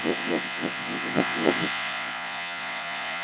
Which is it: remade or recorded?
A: remade